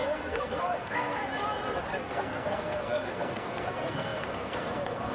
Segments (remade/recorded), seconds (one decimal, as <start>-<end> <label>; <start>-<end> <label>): 0.0-1.2 remade; 1.2-1.8 recorded; 1.8-5.1 remade

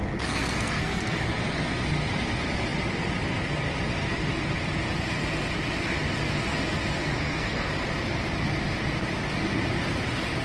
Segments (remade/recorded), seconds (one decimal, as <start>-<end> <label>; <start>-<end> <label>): 0.0-1.2 remade; 1.2-7.0 recorded; 7.0-7.7 remade; 7.7-10.4 recorded

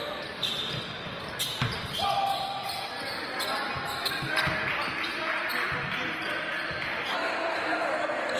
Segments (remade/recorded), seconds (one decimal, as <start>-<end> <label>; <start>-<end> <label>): 0.0-8.4 recorded

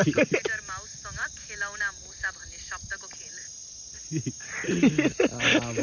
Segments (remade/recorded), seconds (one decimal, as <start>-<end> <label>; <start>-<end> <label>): 0.0-5.8 recorded